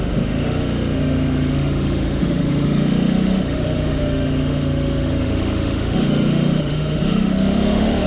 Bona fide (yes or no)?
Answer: no